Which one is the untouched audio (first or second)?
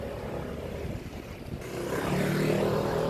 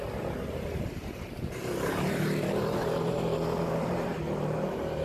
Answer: first